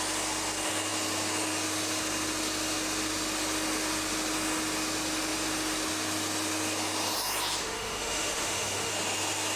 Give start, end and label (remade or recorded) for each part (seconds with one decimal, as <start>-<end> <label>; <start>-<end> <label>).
0.0-7.6 recorded; 7.6-8.9 remade; 8.9-9.6 recorded